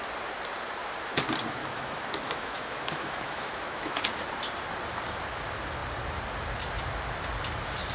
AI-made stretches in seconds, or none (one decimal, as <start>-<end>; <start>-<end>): 1.6-4.0

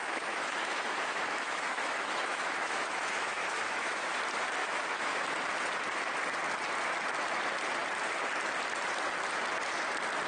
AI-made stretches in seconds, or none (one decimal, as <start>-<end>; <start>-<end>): 0.0-4.1; 4.6-5.2